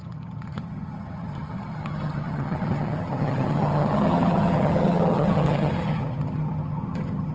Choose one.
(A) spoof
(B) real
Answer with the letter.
A